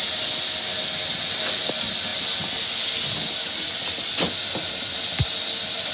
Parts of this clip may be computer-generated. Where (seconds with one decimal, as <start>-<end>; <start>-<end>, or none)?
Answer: none